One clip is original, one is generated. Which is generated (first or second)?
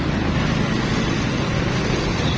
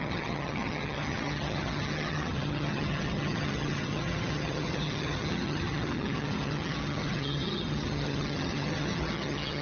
second